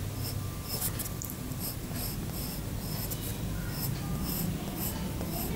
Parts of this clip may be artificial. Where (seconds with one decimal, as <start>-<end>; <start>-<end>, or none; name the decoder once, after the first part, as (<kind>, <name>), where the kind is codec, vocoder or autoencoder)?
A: 0.7-2.8 (vocoder, BigVGAN v2); 3.3-5.6